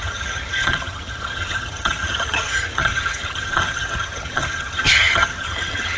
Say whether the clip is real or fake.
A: fake